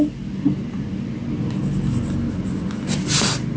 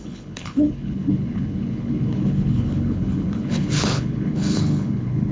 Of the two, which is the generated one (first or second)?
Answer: second